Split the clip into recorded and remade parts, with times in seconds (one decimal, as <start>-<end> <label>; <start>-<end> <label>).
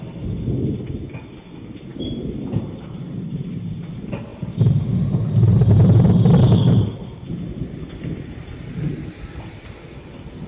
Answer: 0.0-1.9 recorded; 1.9-3.5 remade; 3.5-4.3 recorded; 4.3-9.4 remade; 9.4-10.5 recorded